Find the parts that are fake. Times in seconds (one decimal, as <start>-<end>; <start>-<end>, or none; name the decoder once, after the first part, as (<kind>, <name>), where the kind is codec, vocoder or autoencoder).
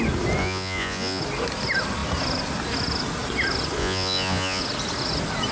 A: 0.4-1.2 (vocoder, Vocos); 3.8-4.6